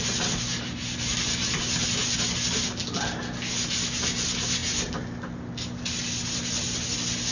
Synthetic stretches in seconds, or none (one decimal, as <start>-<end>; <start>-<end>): none